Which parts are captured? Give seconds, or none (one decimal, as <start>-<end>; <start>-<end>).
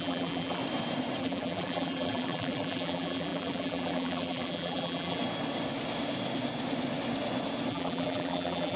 0.6-1.2; 5.2-7.7